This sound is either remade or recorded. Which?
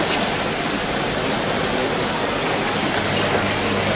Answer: recorded